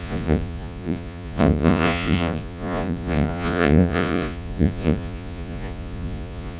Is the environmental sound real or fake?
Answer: fake